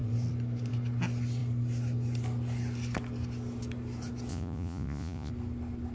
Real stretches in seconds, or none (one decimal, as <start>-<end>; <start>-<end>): 0.0-4.3; 5.3-5.9